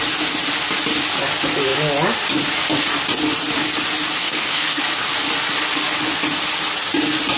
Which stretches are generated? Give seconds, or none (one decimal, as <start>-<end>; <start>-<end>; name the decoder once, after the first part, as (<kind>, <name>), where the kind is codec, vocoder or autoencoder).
4.2-4.8 (codec, SNAC)